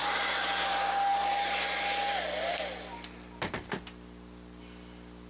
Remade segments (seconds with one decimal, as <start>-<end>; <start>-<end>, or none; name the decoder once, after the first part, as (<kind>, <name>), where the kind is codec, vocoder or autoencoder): none